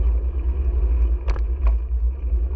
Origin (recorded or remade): recorded